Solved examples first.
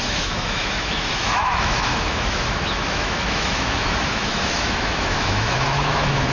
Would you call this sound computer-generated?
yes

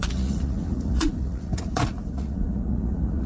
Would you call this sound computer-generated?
yes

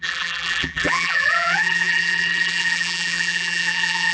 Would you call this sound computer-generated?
yes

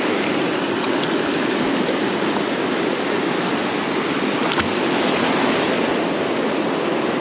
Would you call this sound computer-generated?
no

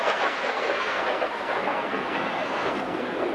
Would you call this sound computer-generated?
yes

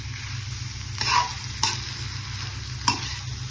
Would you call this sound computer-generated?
no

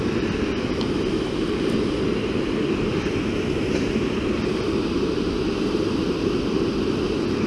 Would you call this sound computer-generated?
no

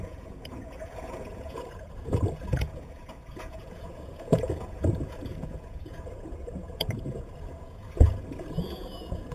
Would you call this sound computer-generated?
yes